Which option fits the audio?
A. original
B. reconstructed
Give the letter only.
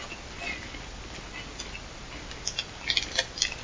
A